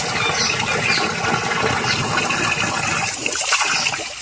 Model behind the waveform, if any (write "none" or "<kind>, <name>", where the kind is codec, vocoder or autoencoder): none